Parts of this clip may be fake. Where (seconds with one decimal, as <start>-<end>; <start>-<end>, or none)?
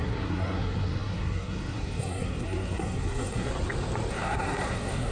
0.0-3.5; 4.1-5.1